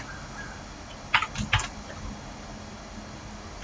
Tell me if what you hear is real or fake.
real